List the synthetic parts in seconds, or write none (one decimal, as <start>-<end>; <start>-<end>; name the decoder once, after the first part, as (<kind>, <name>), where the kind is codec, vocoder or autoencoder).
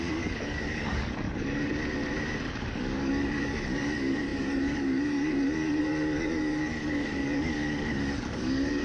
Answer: 0.0-1.7 (codec, DAC); 2.5-8.8